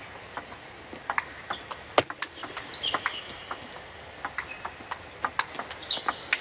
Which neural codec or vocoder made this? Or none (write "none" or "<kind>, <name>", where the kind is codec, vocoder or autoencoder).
none